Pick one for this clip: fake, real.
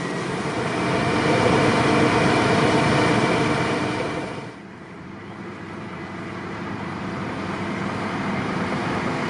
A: fake